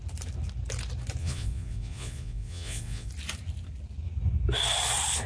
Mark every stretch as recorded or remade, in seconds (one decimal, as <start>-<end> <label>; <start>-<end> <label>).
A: 0.0-1.2 recorded; 1.2-3.1 remade; 3.1-5.3 recorded